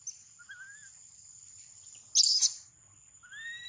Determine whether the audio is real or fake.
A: real